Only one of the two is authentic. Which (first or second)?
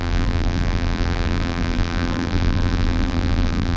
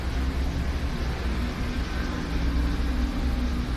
second